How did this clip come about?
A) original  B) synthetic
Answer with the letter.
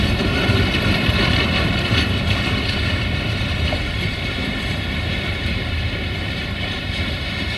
B